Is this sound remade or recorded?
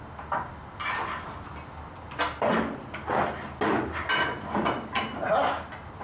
recorded